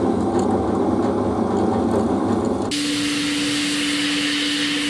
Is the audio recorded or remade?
recorded